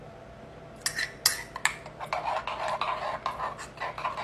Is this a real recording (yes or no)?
yes